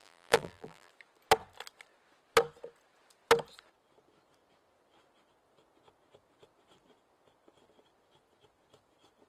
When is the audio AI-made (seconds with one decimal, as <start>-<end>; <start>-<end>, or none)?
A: 0.0-0.9